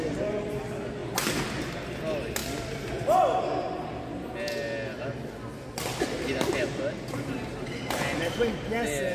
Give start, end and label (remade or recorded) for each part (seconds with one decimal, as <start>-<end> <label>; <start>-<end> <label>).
0.0-9.1 recorded